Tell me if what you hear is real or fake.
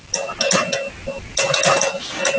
real